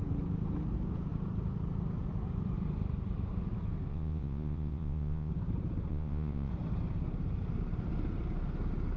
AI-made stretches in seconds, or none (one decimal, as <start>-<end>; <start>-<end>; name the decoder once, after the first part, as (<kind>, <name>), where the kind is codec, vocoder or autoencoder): 3.9-5.3 (vocoder, Vocos); 5.9-6.5

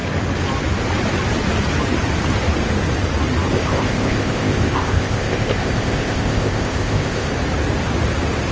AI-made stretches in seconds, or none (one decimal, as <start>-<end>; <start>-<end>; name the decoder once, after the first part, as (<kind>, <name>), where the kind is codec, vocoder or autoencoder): 3.5-7.3 (codec, ZipCodec)

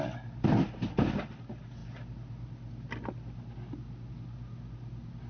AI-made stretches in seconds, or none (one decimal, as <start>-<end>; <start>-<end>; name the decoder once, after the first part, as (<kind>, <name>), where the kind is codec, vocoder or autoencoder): none

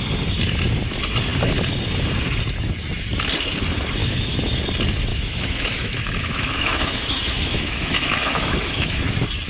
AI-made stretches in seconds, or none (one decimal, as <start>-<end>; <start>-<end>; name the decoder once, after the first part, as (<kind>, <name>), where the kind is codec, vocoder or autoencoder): 4.0-4.6 (autoencoder, DAC-VAE); 5.1-9.0